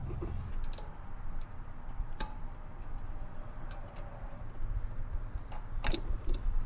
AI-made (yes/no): yes